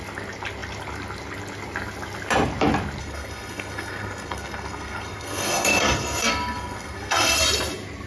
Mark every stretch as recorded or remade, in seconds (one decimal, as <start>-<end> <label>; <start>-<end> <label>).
0.0-3.0 recorded; 3.0-7.4 remade; 7.4-8.1 recorded